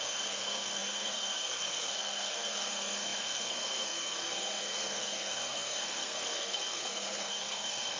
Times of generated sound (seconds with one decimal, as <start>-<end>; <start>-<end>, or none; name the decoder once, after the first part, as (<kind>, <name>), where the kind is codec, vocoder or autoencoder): 0.0-8.0 (codec, SNAC)